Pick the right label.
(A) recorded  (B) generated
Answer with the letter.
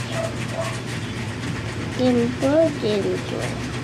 A